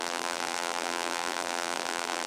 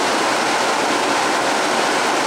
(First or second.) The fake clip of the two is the first